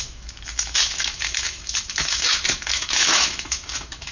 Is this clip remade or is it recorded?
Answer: remade